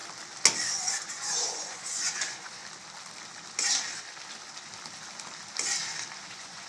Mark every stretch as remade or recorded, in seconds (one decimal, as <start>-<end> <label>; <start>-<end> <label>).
0.0-0.7 recorded; 0.7-2.6 remade; 2.6-6.3 recorded; 6.3-6.7 remade

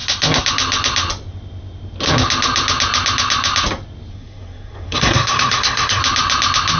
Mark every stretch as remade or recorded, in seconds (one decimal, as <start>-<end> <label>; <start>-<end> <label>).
0.0-4.1 recorded; 4.1-6.0 remade; 6.0-6.8 recorded

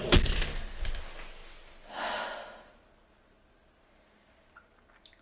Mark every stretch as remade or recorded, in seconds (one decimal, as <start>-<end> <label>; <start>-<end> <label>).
0.0-5.2 recorded

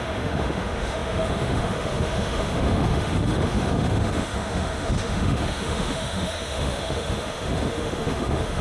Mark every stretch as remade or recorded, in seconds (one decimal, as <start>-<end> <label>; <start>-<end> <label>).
0.0-8.6 remade